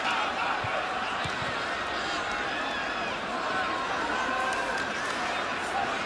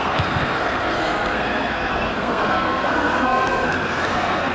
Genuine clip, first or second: first